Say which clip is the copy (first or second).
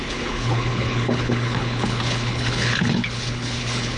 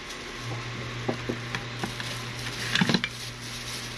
first